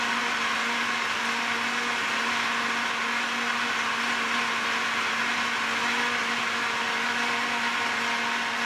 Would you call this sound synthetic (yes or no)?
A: no